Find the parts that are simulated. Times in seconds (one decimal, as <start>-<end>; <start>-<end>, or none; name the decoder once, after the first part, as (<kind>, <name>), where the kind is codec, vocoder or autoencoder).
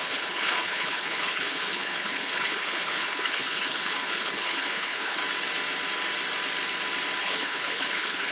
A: 0.0-5.2 (codec, HILCodec); 7.2-8.3